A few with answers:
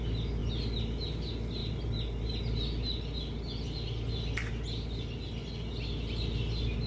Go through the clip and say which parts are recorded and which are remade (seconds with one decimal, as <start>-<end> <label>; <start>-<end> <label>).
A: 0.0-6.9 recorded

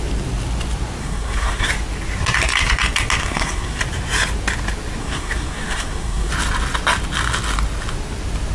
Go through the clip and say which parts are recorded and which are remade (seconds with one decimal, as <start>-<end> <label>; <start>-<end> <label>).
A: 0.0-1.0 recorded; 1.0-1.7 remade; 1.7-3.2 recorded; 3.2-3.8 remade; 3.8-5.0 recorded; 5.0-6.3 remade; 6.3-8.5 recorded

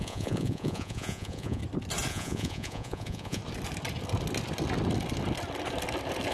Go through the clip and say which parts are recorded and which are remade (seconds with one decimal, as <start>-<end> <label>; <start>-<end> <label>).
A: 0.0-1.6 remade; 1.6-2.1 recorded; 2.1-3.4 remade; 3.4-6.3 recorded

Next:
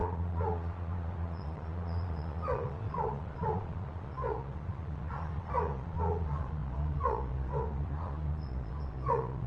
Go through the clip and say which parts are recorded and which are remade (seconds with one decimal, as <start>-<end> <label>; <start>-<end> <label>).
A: 0.0-9.5 remade

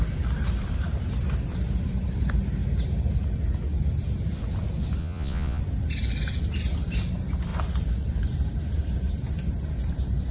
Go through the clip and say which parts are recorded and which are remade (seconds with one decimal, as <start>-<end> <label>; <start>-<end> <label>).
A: 0.0-5.0 recorded; 5.0-5.6 remade; 5.6-10.3 recorded